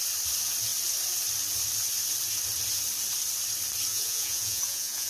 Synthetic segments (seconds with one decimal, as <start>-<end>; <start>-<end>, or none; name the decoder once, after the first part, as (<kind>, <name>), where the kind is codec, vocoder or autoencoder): 3.9-5.1 (vocoder, Vocos)